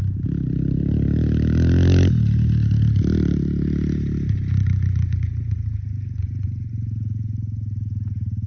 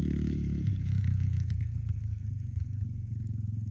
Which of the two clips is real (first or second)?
first